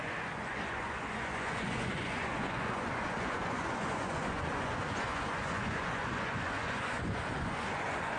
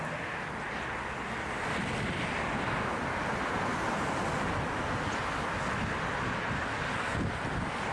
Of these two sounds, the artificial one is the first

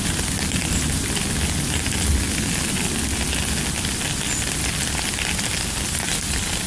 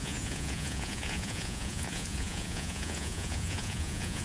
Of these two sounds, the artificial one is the second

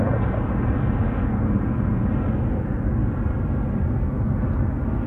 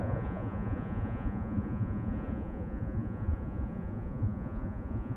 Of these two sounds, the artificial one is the second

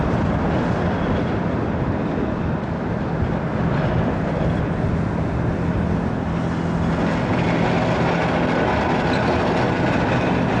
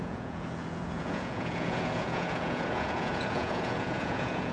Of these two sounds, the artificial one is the second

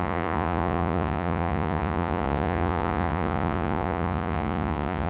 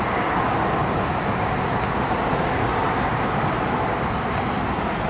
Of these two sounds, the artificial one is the first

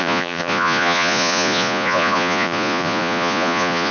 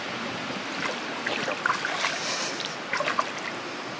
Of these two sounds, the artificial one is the first